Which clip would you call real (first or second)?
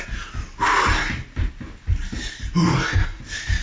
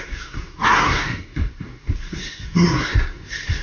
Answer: first